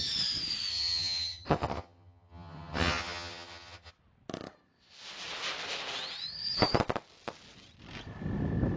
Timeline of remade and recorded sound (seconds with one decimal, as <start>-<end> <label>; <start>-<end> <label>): 0.0-0.7 recorded; 0.7-3.9 remade; 3.9-8.8 recorded